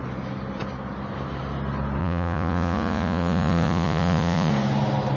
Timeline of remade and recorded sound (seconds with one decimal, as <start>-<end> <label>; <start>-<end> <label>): 0.0-2.0 recorded; 2.0-4.5 remade; 4.5-5.2 recorded